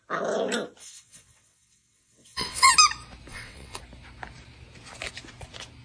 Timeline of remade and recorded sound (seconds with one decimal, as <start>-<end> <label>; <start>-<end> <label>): 0.0-0.8 recorded; 0.8-2.7 remade; 2.7-3.3 recorded; 3.3-3.8 remade; 3.8-5.8 recorded